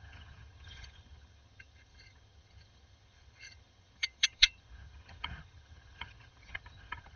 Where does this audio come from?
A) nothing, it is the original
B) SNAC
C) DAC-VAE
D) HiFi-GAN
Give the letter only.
D